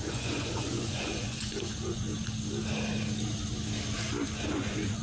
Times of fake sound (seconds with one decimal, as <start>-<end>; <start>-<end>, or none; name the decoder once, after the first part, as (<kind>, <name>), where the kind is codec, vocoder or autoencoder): 0.0-2.1 (vocoder, Vocos); 4.4-5.0